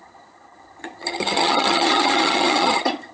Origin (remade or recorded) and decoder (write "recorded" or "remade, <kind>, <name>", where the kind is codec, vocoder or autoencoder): remade, vocoder, HiFi-GAN